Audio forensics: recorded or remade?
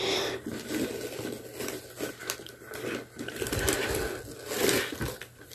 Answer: recorded